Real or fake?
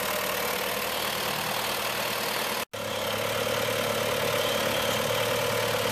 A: real